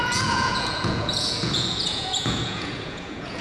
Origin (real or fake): fake